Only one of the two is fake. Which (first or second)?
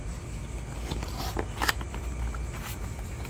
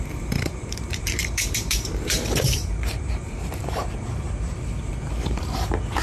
second